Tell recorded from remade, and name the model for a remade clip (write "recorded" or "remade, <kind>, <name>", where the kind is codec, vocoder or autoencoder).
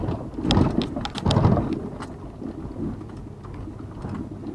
recorded